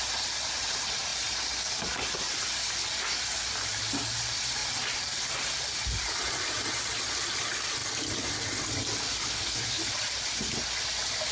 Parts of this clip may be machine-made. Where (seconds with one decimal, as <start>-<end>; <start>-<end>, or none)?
9.2-9.8